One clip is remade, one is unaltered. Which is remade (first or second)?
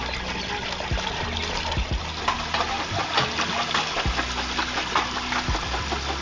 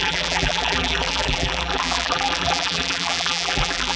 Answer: second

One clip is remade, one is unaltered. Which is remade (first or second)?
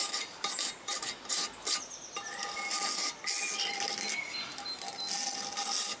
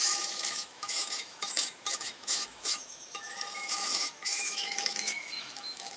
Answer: second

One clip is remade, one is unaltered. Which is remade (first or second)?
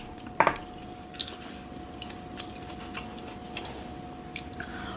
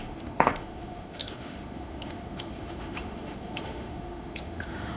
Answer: second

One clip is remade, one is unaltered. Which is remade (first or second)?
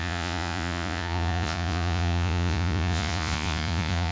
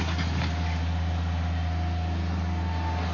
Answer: first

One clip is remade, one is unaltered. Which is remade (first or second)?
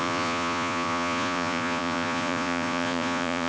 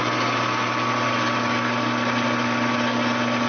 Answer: first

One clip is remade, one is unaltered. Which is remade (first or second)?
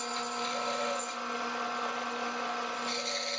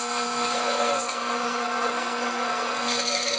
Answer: second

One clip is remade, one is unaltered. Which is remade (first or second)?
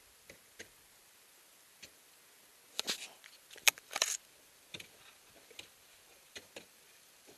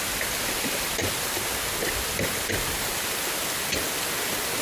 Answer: first